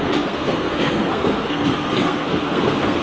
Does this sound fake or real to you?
fake